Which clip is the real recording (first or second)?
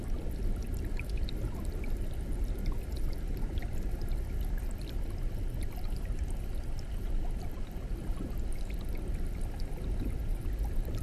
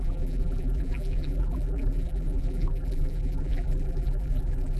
first